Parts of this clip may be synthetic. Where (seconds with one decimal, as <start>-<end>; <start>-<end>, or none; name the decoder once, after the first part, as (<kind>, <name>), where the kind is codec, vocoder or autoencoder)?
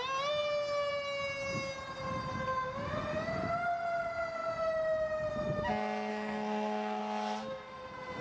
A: 6.1-7.0 (codec, SNAC)